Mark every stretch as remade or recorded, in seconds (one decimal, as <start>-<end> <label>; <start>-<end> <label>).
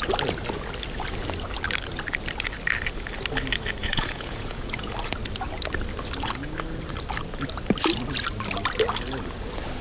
0.0-3.8 recorded; 3.8-4.9 remade; 4.9-9.8 recorded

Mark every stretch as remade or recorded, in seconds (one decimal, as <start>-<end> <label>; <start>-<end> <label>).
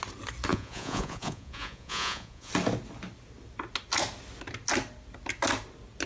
0.0-0.5 recorded; 0.5-2.5 remade; 2.5-6.1 recorded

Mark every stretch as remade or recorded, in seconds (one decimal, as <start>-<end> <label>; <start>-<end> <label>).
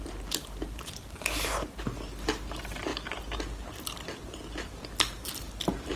0.0-6.0 recorded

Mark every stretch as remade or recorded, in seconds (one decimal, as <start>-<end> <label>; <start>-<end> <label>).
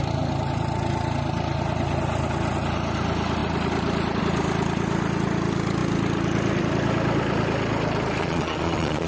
0.0-8.2 recorded; 8.2-9.1 remade